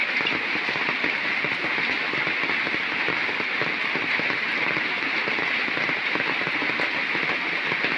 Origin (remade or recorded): recorded